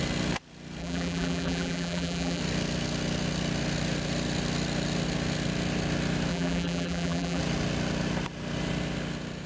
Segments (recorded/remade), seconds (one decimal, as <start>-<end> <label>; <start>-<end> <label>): 0.0-0.8 recorded; 0.8-2.4 remade; 2.4-6.3 recorded; 6.3-7.4 remade; 7.4-9.5 recorded